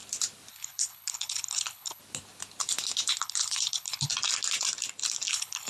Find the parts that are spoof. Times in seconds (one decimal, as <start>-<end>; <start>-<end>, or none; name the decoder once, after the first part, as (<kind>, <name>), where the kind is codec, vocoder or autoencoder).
0.5-2.0 (codec, HILCodec); 3.1-4.1; 5.3-5.7